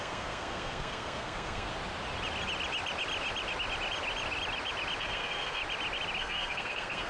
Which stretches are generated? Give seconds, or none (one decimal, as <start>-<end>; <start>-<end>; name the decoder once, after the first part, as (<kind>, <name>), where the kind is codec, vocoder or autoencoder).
0.0-1.7 (codec, SNAC); 5.0-5.6; 6.2-7.1